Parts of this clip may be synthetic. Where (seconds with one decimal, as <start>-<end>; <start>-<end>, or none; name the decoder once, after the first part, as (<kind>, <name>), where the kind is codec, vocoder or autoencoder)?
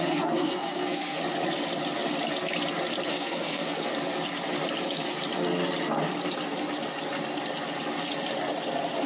0.0-1.2 (codec, SNAC); 3.1-3.9